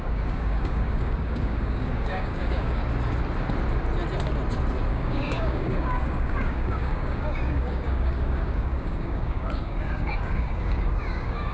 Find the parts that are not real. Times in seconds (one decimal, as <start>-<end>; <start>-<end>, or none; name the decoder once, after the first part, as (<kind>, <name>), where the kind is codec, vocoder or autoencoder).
0.0-2.8 (codec, DAC); 4.9-11.5